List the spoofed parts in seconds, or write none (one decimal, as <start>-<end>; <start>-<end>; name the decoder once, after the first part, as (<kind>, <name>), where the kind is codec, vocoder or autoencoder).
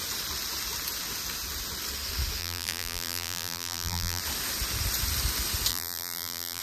2.4-4.2 (vocoder, BigVGAN v2); 5.7-6.6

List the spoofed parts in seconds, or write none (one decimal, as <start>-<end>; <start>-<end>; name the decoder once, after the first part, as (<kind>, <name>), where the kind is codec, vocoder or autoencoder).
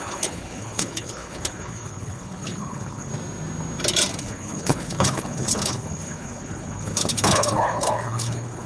0.0-3.1 (codec, HILCodec); 4.2-8.7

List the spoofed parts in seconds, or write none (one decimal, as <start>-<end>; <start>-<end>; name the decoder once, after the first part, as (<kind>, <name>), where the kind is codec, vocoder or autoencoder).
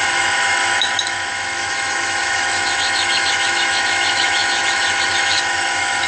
0.0-6.1 (autoencoder, DAC-VAE)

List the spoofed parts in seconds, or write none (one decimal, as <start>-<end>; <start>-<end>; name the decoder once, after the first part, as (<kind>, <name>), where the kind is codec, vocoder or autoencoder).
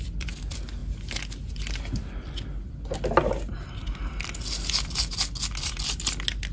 none